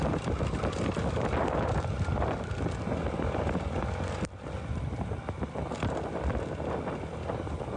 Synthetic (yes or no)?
no